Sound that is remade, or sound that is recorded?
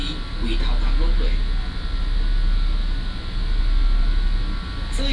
recorded